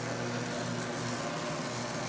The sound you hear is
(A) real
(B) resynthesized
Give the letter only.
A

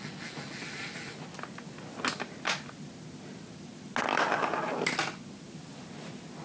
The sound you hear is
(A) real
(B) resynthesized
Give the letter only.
A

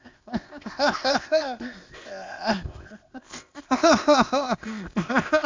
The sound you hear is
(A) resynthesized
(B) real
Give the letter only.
A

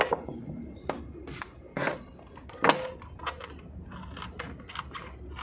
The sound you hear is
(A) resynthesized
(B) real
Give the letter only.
B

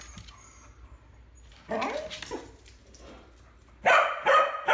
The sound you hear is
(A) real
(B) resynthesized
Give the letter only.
A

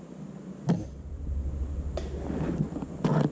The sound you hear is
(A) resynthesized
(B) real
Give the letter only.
B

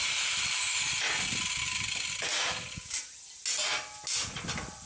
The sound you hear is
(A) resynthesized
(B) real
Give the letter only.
B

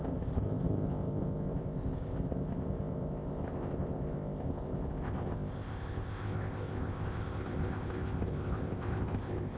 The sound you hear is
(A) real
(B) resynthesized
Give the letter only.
B